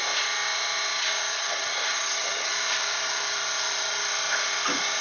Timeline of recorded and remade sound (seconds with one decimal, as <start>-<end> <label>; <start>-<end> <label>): 0.0-1.3 recorded; 1.3-2.5 remade; 2.5-5.0 recorded